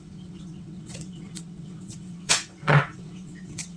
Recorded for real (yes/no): no